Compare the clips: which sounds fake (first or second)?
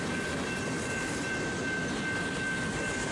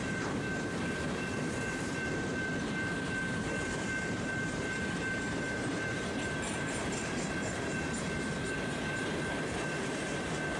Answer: second